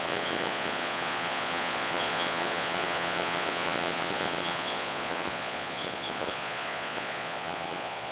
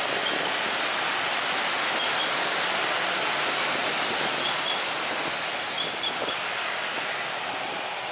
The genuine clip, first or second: second